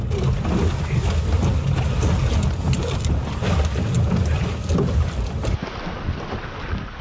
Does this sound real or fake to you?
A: real